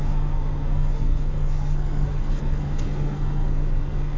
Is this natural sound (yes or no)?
no